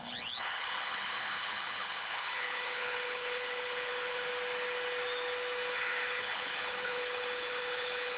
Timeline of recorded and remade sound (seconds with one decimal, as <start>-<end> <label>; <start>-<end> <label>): 0.0-4.3 remade; 4.3-5.7 recorded; 5.7-8.2 remade